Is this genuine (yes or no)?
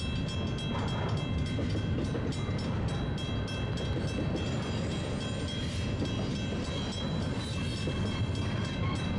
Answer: yes